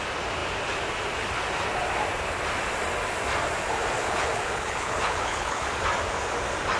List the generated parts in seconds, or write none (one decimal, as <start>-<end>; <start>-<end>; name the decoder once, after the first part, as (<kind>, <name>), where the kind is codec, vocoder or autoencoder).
4.0-5.7 (codec, HILCodec)